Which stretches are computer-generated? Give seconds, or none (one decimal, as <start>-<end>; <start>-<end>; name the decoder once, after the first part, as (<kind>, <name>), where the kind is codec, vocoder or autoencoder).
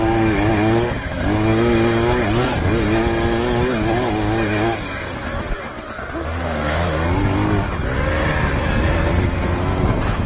6.4-7.2 (codec, DAC)